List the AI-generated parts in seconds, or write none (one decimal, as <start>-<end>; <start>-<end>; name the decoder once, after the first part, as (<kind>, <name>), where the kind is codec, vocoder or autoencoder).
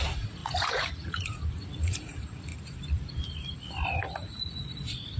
0.0-2.5 (vocoder, Vocos); 3.9-5.2